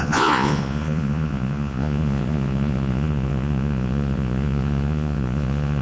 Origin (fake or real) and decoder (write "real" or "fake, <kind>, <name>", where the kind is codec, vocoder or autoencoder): fake, vocoder, Vocos